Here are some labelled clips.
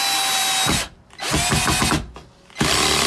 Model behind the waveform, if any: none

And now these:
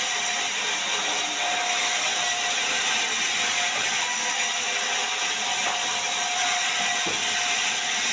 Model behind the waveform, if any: none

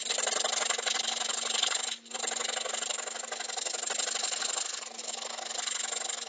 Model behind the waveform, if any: none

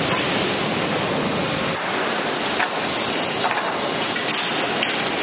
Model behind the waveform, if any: none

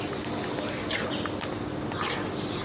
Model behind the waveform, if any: none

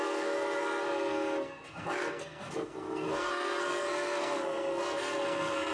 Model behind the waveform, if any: codec, SNAC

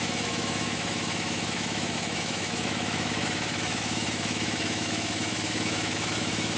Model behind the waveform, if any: autoencoder, DAC-VAE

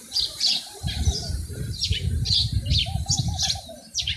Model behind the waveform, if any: vocoder, BigVGAN v2